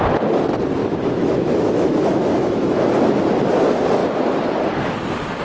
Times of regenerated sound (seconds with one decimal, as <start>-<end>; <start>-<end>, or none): 0.8-2.9